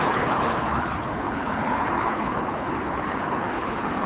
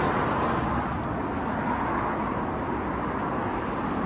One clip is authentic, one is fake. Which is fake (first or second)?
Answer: first